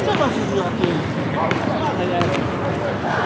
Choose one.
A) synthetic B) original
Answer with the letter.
B